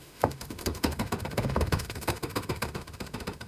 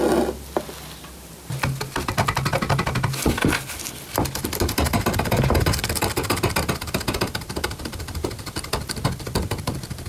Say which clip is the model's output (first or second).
first